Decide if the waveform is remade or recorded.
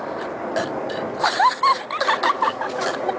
recorded